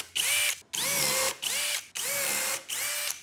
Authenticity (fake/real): real